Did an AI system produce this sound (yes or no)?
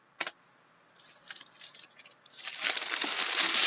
no